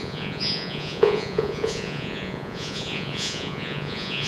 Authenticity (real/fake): fake